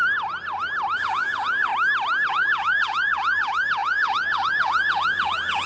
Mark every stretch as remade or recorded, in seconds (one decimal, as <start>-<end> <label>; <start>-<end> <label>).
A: 0.0-1.0 recorded; 1.0-1.7 remade; 1.7-2.3 recorded; 2.3-5.7 remade